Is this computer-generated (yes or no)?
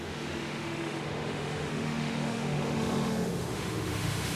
yes